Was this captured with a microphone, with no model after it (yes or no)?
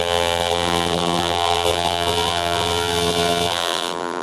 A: no